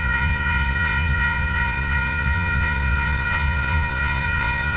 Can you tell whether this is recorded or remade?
remade